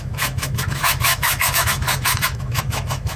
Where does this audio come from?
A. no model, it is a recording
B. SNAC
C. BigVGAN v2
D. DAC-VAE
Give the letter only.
D